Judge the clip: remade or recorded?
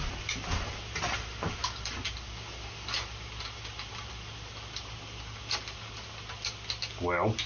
recorded